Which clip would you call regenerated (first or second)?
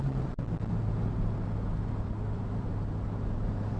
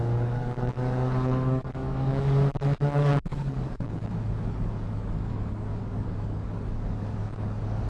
second